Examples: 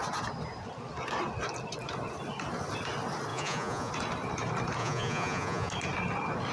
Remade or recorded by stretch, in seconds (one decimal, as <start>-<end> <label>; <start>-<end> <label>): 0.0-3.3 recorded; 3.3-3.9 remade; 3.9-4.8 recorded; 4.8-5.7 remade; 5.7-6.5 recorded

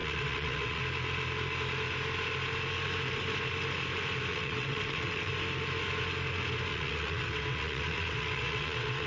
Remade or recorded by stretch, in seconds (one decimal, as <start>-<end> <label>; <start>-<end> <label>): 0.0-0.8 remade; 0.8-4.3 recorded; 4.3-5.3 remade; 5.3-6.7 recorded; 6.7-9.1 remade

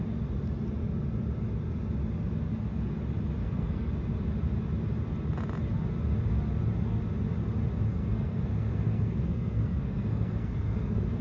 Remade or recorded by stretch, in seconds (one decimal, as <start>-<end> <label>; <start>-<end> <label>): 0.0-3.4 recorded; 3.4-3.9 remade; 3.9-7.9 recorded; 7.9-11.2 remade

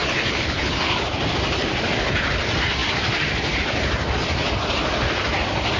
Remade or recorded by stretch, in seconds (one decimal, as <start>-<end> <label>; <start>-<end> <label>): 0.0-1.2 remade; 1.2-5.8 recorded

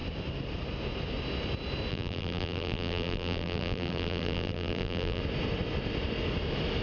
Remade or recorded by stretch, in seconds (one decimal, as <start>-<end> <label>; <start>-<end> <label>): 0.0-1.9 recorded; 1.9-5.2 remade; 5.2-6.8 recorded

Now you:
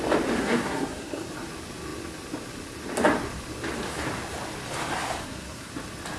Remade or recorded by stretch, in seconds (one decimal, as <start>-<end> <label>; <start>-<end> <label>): 0.0-0.4 recorded; 0.4-1.3 remade; 1.3-5.2 recorded; 5.2-5.7 remade; 5.7-6.2 recorded

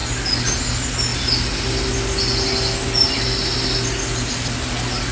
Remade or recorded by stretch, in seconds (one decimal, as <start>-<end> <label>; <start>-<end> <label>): 0.0-5.1 recorded

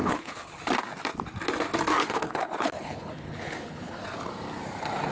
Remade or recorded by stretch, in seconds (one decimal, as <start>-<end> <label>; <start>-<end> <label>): 0.0-0.6 remade; 0.6-2.0 recorded; 2.0-4.0 remade; 4.0-5.1 recorded